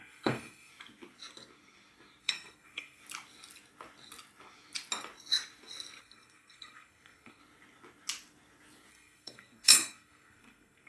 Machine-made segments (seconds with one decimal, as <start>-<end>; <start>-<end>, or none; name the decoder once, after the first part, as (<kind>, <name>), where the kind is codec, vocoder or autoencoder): 0.0-0.7 (codec, SNAC); 2.2-3.0; 6.0-7.4; 8.9-10.9